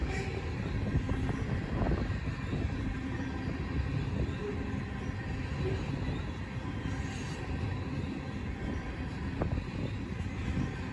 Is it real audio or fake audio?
real